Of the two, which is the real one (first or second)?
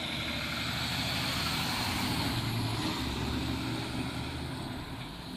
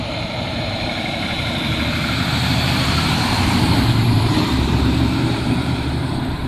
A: first